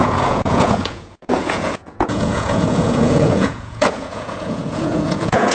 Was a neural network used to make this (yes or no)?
yes